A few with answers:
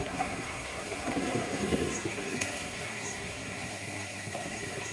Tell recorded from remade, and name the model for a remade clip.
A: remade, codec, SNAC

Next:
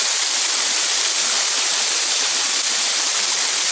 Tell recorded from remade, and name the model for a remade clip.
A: recorded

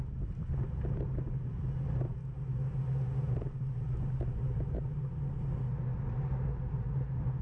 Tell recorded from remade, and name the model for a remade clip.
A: recorded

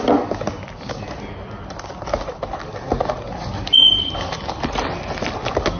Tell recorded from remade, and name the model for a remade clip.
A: recorded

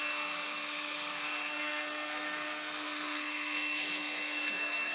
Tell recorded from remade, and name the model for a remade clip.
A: remade, codec, SNAC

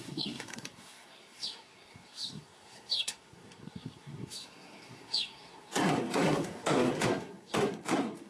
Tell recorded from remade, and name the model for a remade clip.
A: remade, codec, SNAC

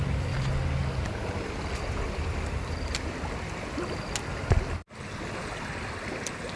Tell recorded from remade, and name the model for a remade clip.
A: recorded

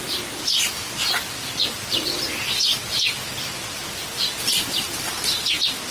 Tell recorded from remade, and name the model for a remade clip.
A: recorded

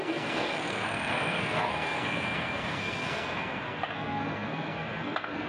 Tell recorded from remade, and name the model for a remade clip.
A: remade, codec, SNAC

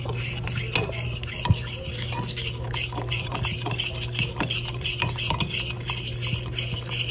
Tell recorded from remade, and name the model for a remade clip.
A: recorded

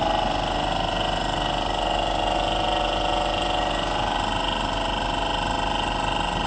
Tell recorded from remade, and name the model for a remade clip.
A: recorded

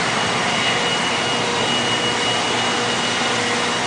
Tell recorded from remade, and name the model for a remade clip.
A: recorded